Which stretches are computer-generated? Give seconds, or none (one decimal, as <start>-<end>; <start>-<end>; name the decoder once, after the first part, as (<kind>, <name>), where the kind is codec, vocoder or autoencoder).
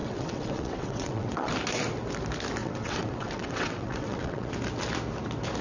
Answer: 0.0-1.5 (vocoder, WaveNeXt); 2.6-4.5